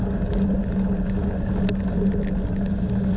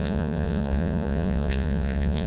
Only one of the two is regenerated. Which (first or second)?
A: second